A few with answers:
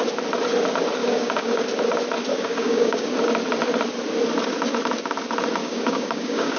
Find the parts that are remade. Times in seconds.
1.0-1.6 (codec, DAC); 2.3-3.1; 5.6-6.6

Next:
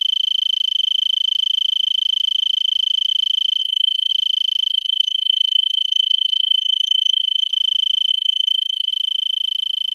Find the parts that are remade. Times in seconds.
3.6-4.1 (codec, DAC); 4.7-7.5; 8.1-8.9

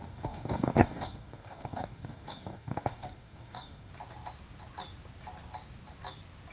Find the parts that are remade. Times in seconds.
0.0-3.9 (codec, DAC)